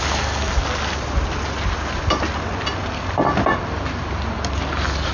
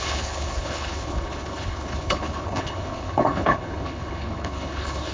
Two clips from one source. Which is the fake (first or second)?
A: second